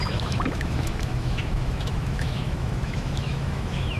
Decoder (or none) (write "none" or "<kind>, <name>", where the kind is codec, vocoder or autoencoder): autoencoder, DAC-VAE